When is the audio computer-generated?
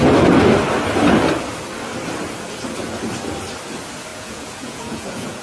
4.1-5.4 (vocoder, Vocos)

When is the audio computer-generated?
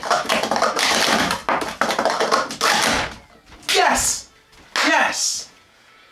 5.3-6.1 (vocoder, Vocos)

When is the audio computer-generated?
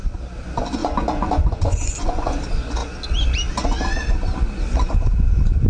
0.8-2.4 (vocoder, Vocos)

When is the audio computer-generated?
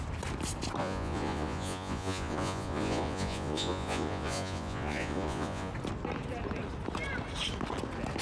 0.8-5.7 (vocoder, Vocos)